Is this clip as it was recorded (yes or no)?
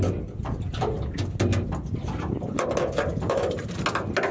yes